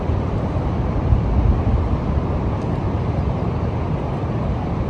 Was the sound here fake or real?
real